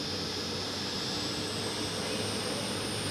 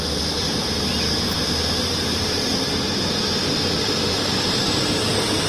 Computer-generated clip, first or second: second